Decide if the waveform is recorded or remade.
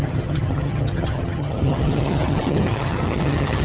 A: remade